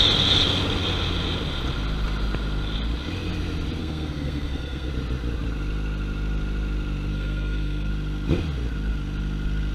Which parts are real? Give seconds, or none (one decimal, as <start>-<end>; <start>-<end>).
0.0-3.8; 4.9-7.1; 7.9-9.7